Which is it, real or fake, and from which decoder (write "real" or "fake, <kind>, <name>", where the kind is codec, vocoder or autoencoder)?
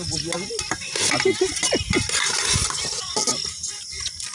real